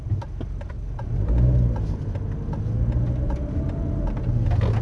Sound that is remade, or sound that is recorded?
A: recorded